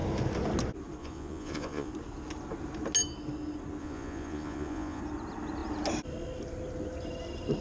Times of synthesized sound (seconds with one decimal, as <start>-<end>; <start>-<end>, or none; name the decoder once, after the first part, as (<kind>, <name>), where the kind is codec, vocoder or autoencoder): 1.0-1.9 (vocoder, Vocos); 3.8-5.0